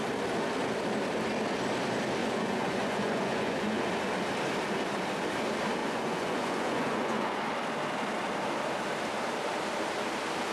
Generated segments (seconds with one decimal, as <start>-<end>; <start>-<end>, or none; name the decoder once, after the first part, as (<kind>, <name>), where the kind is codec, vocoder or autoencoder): 2.2-3.8 (vocoder, Vocos); 5.8-7.4